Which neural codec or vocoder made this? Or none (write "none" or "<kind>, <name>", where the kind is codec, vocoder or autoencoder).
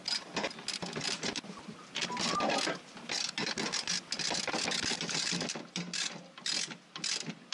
none